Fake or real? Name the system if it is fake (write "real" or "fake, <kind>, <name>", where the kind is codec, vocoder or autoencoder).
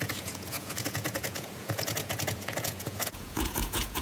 fake, vocoder, Vocos